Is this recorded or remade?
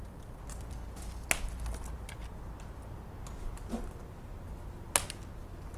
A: recorded